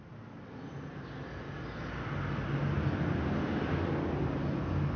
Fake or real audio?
real